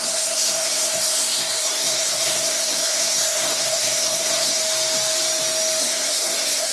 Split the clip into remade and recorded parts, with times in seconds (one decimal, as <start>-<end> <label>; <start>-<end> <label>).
0.0-4.6 remade; 4.6-5.8 recorded; 5.8-6.7 remade